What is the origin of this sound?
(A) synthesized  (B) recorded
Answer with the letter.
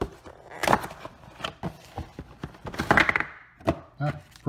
B